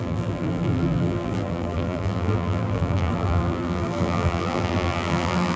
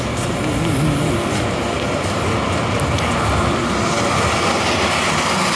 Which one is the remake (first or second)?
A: first